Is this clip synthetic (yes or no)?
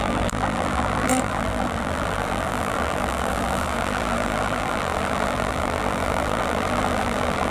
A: yes